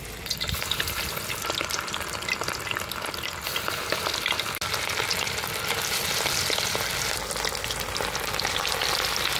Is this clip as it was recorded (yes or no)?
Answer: yes